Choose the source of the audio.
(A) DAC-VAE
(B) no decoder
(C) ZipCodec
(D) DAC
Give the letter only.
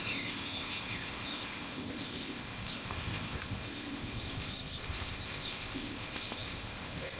C